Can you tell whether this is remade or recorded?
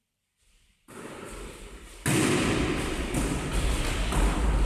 recorded